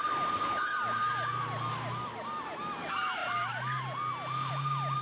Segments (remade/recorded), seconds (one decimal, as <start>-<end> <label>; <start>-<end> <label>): 0.0-5.0 recorded